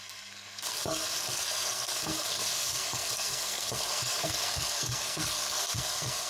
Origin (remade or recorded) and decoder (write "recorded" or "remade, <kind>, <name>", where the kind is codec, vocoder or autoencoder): remade, codec, SNAC